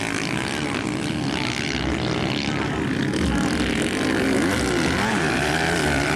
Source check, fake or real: real